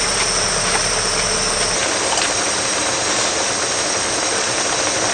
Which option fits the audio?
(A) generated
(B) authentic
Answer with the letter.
B